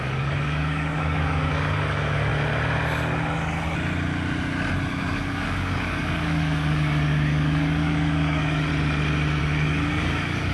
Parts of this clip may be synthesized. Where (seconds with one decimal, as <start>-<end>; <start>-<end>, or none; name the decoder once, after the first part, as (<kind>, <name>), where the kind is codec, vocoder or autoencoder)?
0.0-2.3 (codec, DAC); 5.0-8.7; 9.4-10.5